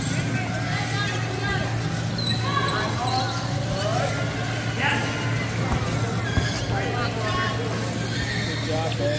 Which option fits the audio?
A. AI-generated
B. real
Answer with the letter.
B